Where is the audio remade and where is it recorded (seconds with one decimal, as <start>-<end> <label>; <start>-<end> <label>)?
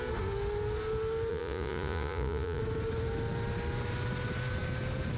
0.0-1.3 recorded; 1.3-2.6 remade; 2.6-5.2 recorded